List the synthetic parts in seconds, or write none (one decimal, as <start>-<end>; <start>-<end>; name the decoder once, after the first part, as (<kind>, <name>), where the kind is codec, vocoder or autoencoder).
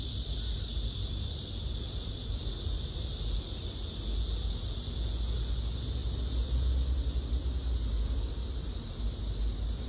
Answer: none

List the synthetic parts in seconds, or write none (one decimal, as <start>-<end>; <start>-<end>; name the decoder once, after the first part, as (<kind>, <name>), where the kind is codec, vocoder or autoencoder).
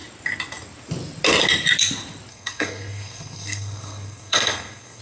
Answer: 2.3-5.0 (codec, SNAC)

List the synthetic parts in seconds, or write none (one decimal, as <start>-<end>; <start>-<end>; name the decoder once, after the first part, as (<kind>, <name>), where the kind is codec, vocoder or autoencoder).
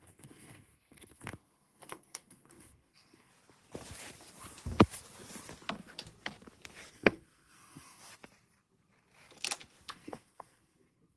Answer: 0.0-3.3 (codec, SNAC); 6.9-8.0; 9.9-11.2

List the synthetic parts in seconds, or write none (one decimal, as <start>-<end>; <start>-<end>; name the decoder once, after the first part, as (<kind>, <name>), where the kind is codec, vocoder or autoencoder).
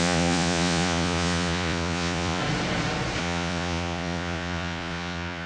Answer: 0.0-2.4 (vocoder, Vocos); 3.2-5.5